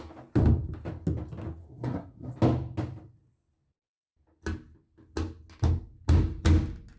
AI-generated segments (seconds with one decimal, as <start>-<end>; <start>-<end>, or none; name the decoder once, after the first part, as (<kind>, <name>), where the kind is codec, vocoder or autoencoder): 1.6-2.3 (codec, SNAC)

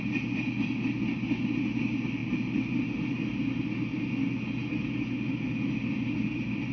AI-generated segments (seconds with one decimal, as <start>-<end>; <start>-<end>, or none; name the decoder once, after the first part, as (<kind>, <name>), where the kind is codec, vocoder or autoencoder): none

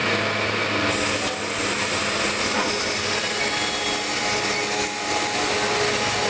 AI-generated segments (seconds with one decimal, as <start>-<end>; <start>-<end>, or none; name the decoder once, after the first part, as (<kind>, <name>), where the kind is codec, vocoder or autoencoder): none

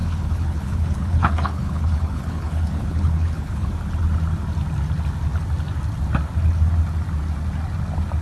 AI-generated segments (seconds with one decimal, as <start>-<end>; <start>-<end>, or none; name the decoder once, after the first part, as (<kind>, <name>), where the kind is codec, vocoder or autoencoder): 0.0-3.7 (codec, HILCodec)

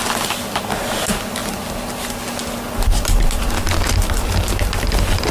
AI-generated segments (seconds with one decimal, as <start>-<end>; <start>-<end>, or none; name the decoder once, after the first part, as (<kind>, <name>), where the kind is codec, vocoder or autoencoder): none

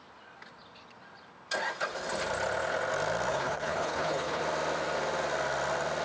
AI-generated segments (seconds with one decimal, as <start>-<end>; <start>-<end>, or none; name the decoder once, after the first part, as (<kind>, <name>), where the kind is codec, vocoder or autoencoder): 3.3-4.4 (codec, HILCodec)

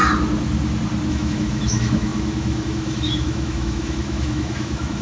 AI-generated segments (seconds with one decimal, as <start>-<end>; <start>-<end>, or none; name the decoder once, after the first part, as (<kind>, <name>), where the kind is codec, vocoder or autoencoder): 1.1-5.0 (autoencoder, DAC-VAE)